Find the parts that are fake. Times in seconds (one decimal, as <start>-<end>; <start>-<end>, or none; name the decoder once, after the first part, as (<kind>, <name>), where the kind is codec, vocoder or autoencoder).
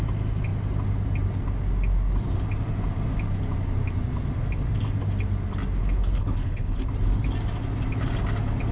5.8-6.8 (codec, HILCodec)